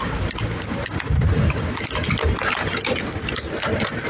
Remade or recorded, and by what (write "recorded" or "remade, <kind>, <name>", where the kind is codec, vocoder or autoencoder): recorded